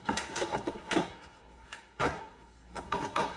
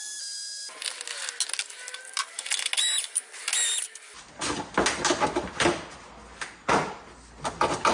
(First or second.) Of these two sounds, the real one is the second